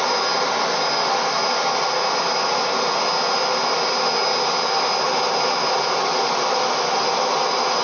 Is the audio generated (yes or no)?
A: no